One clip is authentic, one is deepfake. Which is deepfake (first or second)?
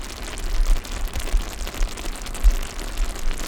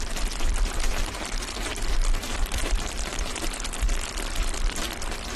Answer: second